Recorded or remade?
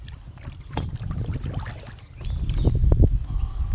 recorded